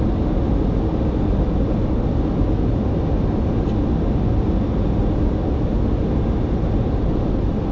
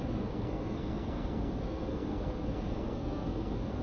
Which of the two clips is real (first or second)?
first